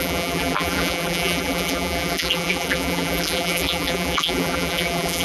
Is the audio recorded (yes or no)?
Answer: no